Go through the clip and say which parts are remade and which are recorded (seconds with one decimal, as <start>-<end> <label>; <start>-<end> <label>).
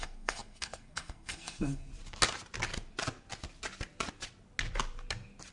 0.0-1.9 remade; 1.9-5.5 recorded